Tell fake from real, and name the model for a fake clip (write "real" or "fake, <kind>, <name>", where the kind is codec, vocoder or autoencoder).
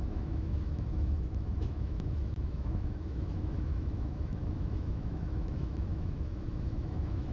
fake, autoencoder, DAC-VAE